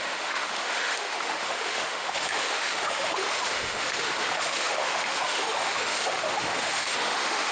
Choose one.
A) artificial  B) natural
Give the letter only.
A